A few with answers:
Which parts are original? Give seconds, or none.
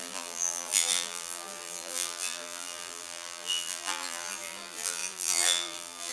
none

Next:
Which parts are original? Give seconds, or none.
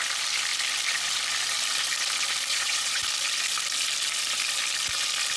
0.0-2.5; 3.0-5.4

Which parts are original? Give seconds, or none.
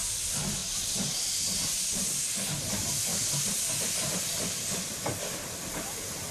0.6-2.6; 3.1-4.2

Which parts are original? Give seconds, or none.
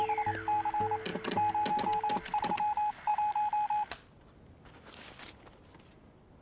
0.0-6.4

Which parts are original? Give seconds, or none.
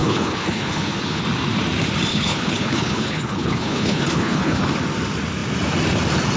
1.2-2.1; 4.7-6.4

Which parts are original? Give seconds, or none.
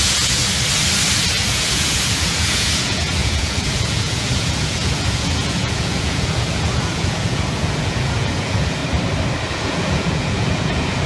0.4-1.5; 8.8-9.5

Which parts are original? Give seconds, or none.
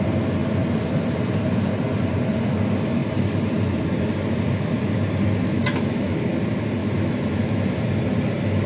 0.0-5.4; 6.2-6.8; 7.8-8.7